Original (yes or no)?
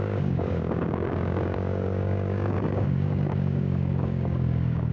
no